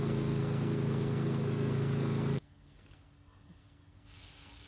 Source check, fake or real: fake